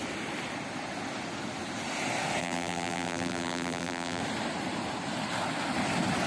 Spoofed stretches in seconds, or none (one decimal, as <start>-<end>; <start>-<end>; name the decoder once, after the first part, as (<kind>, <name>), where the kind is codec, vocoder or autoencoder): 2.4-4.2 (vocoder, BigVGAN v2)